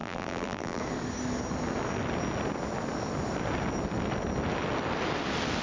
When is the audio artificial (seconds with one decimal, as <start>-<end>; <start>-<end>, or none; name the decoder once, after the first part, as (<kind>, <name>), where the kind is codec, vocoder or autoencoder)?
0.0-0.8 (vocoder, BigVGAN v2)